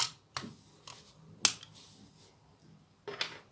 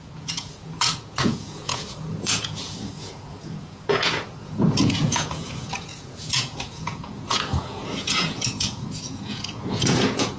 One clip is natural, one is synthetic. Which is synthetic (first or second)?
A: second